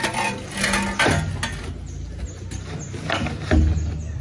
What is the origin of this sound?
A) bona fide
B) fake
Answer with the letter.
A